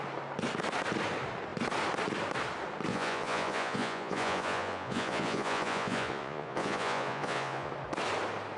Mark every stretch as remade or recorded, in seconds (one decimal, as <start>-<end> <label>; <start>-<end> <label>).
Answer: 0.0-2.9 recorded; 2.9-7.7 remade; 7.7-8.6 recorded